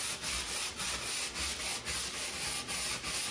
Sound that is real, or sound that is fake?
real